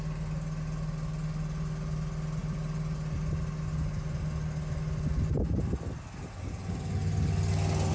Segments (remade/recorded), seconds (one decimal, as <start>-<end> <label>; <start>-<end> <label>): 0.0-7.9 recorded